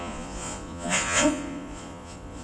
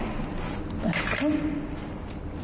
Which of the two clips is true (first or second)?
second